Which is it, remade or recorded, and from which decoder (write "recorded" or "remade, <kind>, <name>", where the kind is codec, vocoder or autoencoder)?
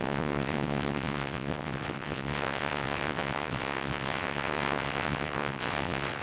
remade, vocoder, WaveNeXt